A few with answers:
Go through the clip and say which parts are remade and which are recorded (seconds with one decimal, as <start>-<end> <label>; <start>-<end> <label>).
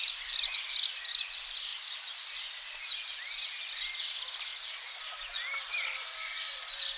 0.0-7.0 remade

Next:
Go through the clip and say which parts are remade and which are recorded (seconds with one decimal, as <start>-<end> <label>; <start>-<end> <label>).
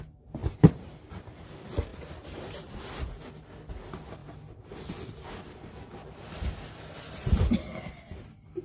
0.0-0.4 recorded; 0.4-1.1 remade; 1.1-1.9 recorded; 1.9-3.4 remade; 3.4-4.2 recorded; 4.2-5.3 remade; 5.3-5.9 recorded; 5.9-8.2 remade; 8.2-8.6 recorded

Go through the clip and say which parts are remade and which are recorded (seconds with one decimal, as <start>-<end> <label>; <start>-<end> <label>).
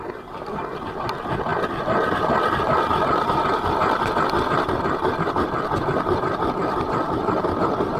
0.0-8.0 recorded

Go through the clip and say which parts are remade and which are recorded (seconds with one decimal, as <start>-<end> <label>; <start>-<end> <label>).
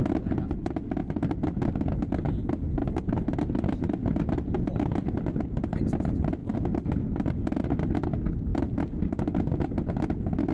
0.0-8.5 recorded; 8.5-9.4 remade; 9.4-10.5 recorded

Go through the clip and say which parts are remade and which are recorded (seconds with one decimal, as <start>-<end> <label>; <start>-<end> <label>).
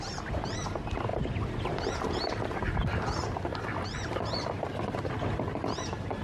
0.0-6.2 remade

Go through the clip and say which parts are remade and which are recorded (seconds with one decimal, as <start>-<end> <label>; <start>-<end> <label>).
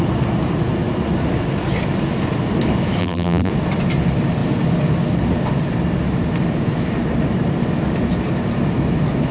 0.0-3.0 recorded; 3.0-3.5 remade; 3.5-9.3 recorded